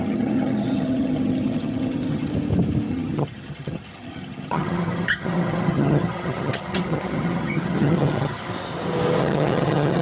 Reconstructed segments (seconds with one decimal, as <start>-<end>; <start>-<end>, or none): 0.0-2.3; 2.9-8.4; 9.2-10.0